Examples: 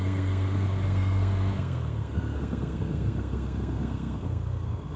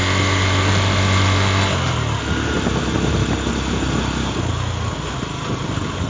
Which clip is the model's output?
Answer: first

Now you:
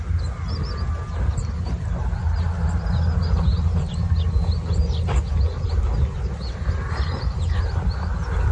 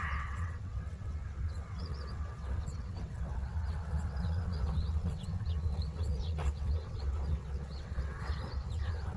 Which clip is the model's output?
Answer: second